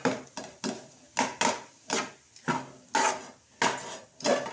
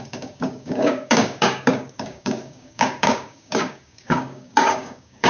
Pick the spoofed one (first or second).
second